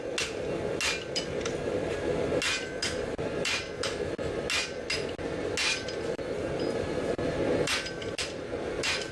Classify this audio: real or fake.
real